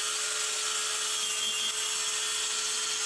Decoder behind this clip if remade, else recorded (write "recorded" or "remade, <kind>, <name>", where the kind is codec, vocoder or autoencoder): recorded